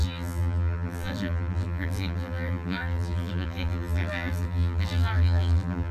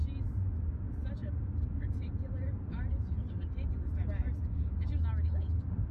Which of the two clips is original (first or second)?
second